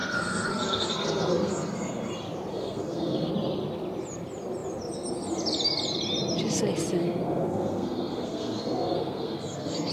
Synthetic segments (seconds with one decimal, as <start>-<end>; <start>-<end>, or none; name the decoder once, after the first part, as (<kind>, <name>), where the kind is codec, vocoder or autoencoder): 0.0-2.1 (codec, SNAC); 2.5-3.3; 7.0-9.9